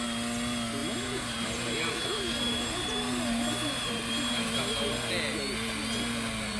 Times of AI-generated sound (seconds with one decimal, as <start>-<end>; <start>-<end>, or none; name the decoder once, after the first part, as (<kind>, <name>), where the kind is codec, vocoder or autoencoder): 0.8-4.8 (vocoder, BigVGAN v2)